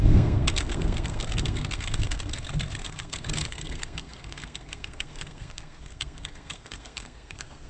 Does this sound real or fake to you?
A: fake